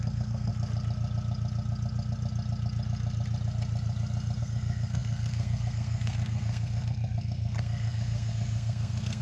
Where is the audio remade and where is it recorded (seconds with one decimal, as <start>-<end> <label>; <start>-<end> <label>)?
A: 0.0-0.5 remade; 0.5-4.4 recorded; 4.4-9.2 remade